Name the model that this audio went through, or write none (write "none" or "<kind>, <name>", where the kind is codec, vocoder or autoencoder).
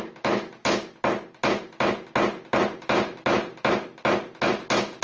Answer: none